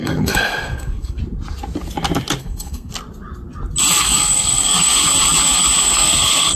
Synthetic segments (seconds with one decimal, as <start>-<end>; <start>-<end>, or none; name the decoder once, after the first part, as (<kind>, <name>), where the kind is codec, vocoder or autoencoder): 0.0-1.2 (codec, SNAC); 2.4-2.9; 4.0-5.0; 5.8-6.6